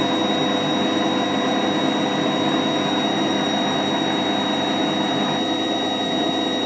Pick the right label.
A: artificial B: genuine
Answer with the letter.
B